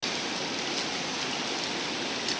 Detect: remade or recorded recorded